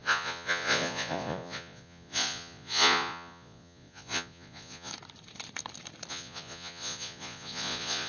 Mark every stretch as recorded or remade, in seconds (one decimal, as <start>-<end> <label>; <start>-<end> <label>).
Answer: 0.0-4.9 remade; 4.9-6.1 recorded; 6.1-8.1 remade